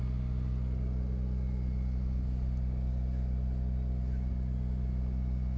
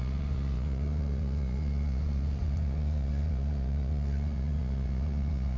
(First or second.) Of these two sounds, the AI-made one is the second